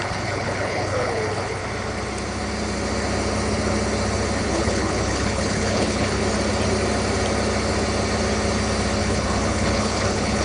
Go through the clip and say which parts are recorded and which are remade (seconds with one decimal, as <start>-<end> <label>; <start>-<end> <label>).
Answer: 0.0-1.6 remade; 1.6-4.4 recorded; 4.4-6.2 remade; 6.2-9.0 recorded; 9.0-10.4 remade